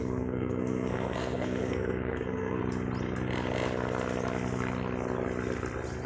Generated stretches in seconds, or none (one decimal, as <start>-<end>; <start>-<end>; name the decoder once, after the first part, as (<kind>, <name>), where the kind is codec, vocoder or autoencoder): 0.0-2.6 (codec, SNAC)